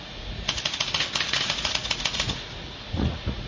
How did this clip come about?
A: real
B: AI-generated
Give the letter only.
B